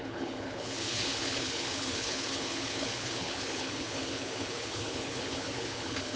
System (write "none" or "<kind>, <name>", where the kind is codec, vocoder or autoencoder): codec, HILCodec